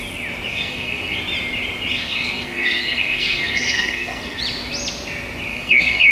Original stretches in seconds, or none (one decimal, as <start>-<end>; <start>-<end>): 0.0-0.5; 1.2-1.9; 4.4-5.5